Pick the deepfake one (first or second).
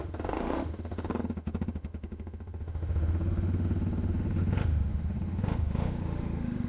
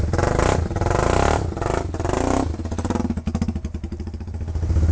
first